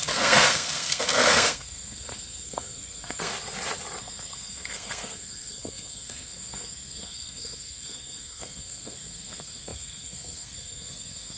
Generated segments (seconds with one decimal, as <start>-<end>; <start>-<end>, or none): 0.0-3.3; 4.0-11.4